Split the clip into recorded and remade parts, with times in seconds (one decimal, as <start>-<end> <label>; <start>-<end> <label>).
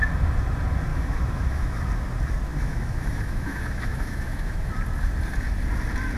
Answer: 0.0-0.9 recorded; 0.9-1.9 remade; 1.9-2.5 recorded; 2.5-4.7 remade; 4.7-6.2 recorded